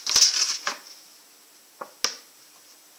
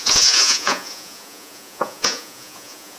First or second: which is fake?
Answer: second